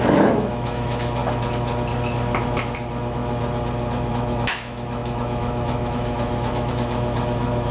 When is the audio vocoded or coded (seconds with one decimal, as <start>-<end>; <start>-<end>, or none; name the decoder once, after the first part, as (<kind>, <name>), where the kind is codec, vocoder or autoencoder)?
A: 0.0-1.2 (autoencoder, DAC-VAE); 4.1-7.7